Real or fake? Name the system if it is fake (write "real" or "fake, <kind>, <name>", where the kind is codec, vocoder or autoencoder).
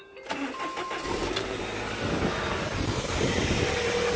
real